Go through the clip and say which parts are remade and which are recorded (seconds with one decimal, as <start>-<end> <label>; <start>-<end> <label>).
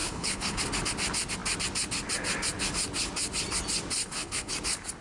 0.0-0.6 remade; 0.6-4.0 recorded; 4.0-4.5 remade; 4.5-5.0 recorded